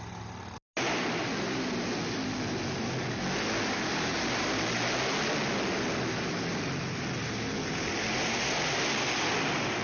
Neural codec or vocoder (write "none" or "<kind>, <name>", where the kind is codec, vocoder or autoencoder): none